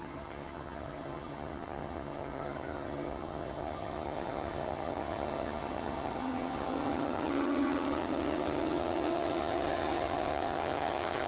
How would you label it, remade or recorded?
remade